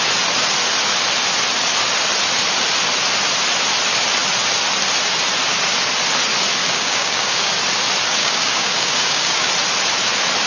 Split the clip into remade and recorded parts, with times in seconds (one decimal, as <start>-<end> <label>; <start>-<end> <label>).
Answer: 0.0-6.6 recorded; 6.6-7.5 remade; 7.5-8.2 recorded; 8.2-9.5 remade; 9.5-10.5 recorded